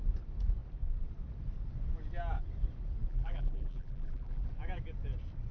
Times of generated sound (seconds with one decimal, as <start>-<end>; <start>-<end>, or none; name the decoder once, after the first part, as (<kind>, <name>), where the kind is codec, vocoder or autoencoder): 3.1-4.5 (vocoder, BigVGAN v2)